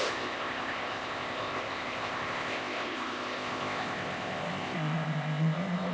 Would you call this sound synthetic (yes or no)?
yes